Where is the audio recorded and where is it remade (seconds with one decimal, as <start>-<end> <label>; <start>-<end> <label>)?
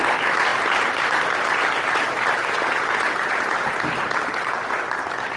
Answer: 0.0-5.4 recorded